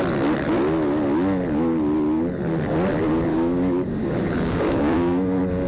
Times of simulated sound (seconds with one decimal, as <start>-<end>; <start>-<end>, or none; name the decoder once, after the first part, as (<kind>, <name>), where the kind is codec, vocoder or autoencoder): 3.3-5.7 (codec, DAC)